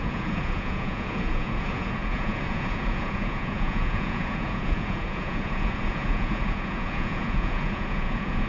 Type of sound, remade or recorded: remade